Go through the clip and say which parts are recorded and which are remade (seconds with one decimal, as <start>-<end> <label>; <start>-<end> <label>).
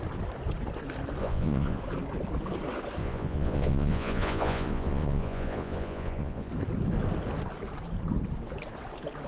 0.0-1.2 recorded; 1.2-1.8 remade; 1.8-3.0 recorded; 3.0-6.5 remade; 6.5-9.3 recorded